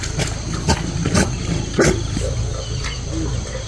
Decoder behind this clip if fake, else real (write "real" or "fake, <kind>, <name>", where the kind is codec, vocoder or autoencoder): real